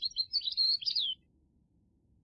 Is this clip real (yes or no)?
no